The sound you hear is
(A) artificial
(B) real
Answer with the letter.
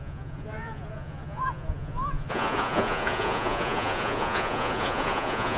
A